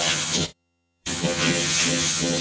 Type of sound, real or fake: fake